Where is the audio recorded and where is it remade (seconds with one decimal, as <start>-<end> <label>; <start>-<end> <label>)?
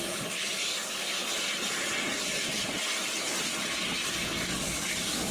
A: 0.0-1.2 remade; 1.2-4.1 recorded; 4.1-5.3 remade